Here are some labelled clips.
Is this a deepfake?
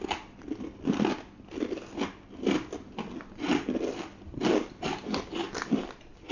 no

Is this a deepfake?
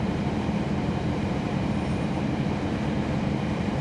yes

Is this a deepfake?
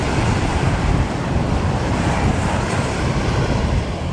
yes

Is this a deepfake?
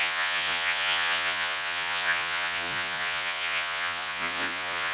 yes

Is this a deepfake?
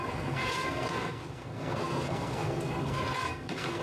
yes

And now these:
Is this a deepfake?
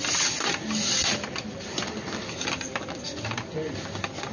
no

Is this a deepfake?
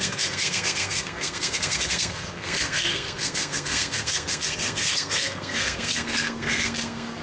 yes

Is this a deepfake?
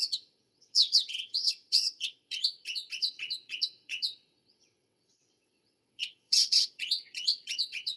yes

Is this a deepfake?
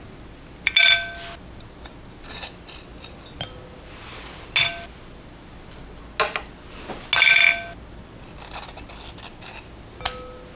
no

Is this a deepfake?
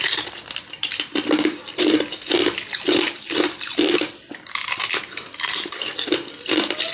no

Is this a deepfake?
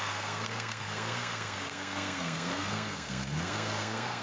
yes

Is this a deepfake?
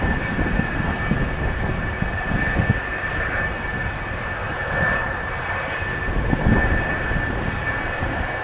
no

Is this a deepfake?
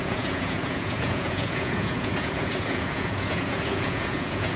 yes